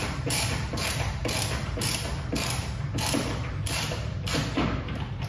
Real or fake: fake